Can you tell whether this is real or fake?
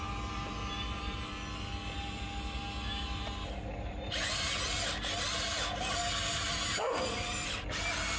real